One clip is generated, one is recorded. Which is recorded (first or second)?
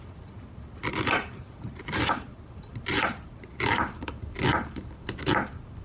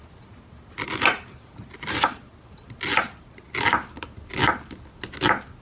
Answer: second